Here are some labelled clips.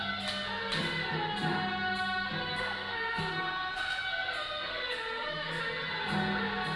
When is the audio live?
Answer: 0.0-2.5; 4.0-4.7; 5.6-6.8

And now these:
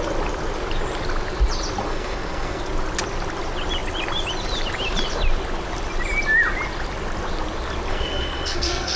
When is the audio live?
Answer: 0.0-1.8; 2.6-7.9